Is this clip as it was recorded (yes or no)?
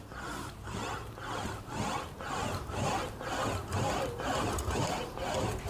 yes